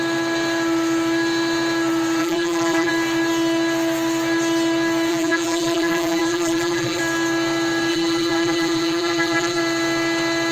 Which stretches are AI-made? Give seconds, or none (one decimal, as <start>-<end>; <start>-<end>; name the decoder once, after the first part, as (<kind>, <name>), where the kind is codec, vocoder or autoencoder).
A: 2.2-2.9 (vocoder, BigVGAN v2); 5.1-7.0; 7.9-9.6